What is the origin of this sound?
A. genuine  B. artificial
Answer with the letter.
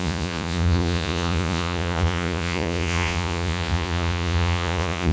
B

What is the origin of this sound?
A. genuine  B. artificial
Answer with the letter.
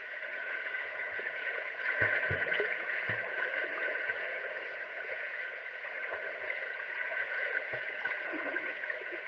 B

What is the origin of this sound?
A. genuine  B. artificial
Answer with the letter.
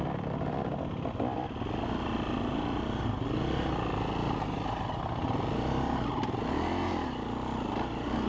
A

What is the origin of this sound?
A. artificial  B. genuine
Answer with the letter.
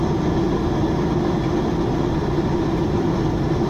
B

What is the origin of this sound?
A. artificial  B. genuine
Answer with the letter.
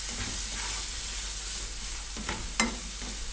B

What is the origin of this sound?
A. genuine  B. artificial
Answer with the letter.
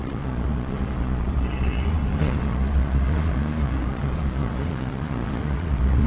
B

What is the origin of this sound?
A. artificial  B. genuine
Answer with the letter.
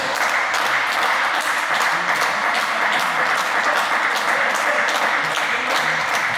B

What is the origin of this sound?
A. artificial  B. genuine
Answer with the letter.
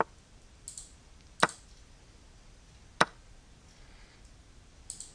B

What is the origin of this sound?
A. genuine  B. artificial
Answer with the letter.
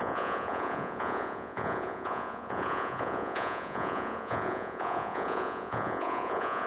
B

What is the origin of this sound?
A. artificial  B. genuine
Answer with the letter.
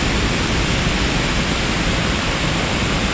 B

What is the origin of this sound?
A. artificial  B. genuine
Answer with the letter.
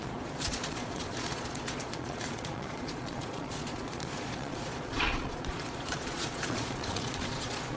A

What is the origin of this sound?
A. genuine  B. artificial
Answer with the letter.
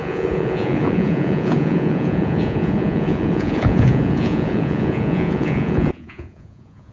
B